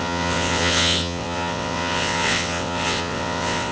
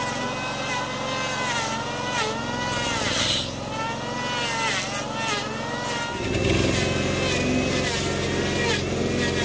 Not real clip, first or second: first